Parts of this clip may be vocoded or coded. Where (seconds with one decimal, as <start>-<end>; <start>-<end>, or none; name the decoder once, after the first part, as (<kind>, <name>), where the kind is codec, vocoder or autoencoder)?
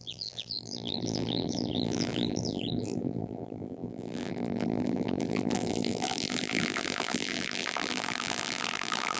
0.0-9.2 (vocoder, BigVGAN v2)